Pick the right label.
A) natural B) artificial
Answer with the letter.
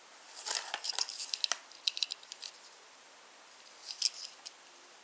A